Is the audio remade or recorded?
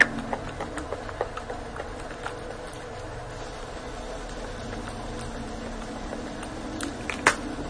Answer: recorded